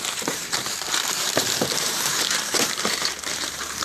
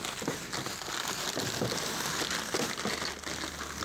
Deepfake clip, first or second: first